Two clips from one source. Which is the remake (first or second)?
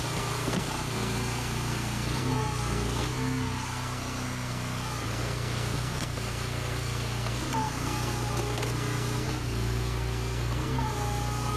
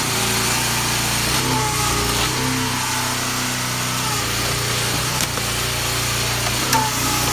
first